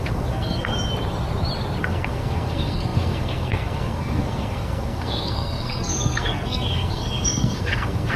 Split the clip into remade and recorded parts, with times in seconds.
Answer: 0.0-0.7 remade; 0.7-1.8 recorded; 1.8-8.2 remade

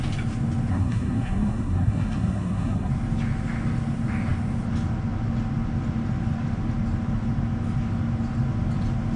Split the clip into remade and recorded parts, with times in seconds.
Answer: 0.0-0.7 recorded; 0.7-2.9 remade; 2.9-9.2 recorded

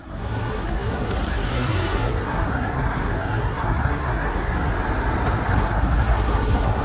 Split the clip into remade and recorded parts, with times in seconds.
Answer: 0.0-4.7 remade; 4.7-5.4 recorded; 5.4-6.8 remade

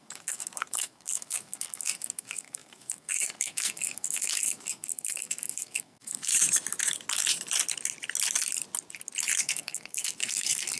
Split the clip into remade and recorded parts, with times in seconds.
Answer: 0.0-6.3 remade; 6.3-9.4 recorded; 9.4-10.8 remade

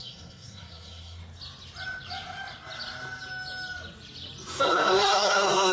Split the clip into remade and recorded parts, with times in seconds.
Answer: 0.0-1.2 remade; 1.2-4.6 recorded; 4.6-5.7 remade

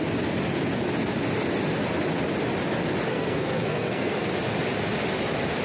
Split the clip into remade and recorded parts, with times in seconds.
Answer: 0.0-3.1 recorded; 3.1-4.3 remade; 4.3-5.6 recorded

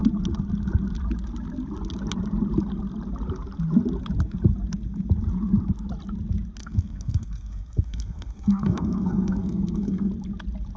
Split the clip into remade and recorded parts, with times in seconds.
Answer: 0.0-6.6 recorded; 6.6-10.1 remade; 10.1-10.8 recorded

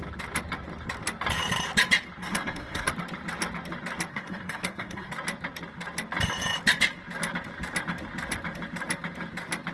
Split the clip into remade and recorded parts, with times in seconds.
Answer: 0.0-2.2 recorded; 2.2-2.9 remade; 2.9-4.1 recorded; 4.1-5.1 remade; 5.1-9.7 recorded